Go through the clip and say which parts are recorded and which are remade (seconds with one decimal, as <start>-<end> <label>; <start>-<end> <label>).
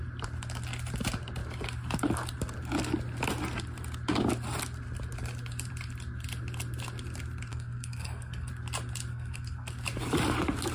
0.0-7.5 recorded; 7.5-8.5 remade; 8.5-9.1 recorded; 9.1-9.7 remade; 9.7-10.7 recorded